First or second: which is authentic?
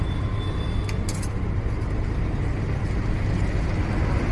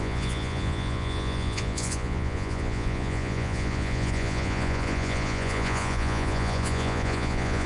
first